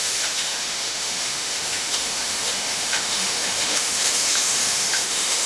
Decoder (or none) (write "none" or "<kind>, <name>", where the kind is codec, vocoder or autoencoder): autoencoder, DAC-VAE